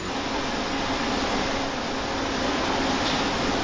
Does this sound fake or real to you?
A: real